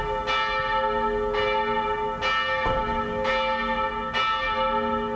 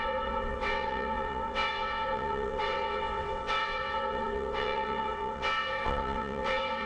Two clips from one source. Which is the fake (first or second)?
second